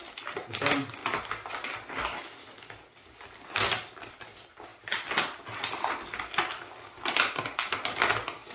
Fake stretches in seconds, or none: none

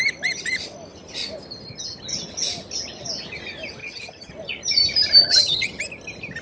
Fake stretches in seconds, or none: 3.8-4.3; 5.2-5.8

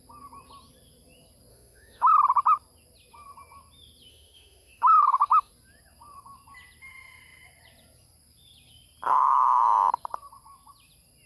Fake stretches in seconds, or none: 1.5-2.1; 4.1-5.5

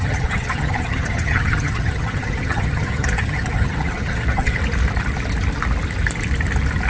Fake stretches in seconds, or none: 0.0-4.6

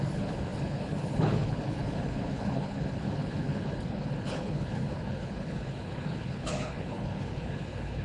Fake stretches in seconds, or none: 0.0-8.0

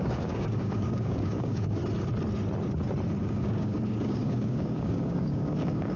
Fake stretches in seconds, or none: 0.0-1.8; 3.2-6.0

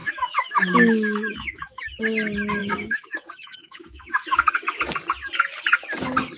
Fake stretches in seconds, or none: 0.0-2.0; 2.6-4.5